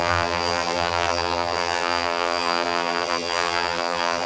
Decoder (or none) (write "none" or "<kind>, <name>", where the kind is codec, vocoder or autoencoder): vocoder, BigVGAN v2